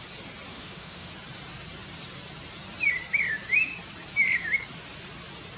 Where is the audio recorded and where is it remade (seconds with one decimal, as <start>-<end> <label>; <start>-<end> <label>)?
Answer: 0.0-0.5 recorded; 0.5-1.1 remade; 1.1-5.6 recorded